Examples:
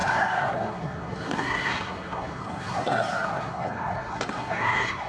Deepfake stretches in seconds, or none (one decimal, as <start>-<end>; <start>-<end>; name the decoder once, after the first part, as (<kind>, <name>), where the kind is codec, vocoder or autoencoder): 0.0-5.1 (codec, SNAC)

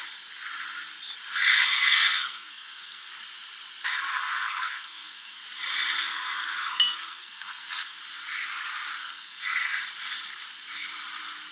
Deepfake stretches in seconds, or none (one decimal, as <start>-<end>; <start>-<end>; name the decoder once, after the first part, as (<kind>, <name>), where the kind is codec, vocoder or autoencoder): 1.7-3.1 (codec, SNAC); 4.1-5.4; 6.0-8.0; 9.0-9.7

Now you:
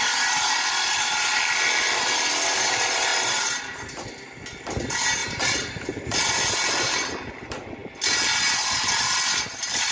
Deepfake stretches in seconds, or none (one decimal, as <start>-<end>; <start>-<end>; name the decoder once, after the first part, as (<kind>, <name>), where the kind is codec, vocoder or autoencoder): 3.1-4.1 (vocoder, BigVGAN v2); 5.2-6.2